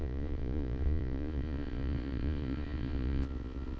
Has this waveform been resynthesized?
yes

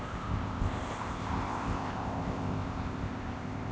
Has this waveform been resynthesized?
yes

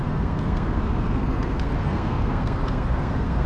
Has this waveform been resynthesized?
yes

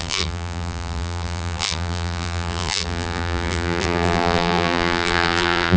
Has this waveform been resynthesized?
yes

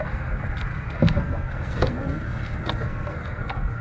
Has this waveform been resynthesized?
yes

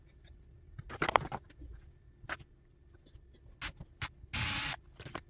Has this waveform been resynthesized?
no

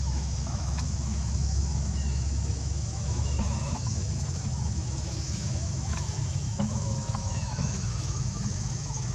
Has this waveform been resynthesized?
yes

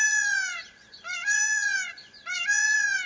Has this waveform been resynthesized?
yes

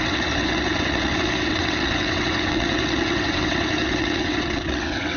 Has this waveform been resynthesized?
yes